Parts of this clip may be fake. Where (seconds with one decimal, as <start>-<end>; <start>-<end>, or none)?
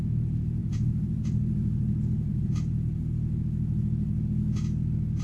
0.6-2.5